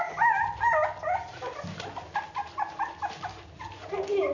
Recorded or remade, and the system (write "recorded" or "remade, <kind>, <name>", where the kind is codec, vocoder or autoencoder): recorded